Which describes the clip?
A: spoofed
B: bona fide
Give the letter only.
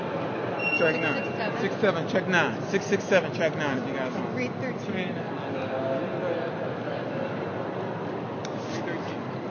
B